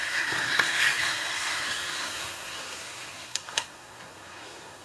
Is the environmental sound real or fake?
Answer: fake